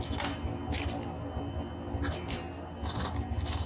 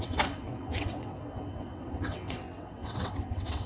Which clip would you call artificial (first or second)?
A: second